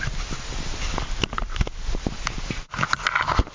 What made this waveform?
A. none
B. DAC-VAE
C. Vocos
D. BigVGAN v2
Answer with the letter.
A